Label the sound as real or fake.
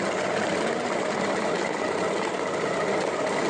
real